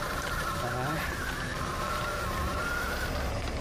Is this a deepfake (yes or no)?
no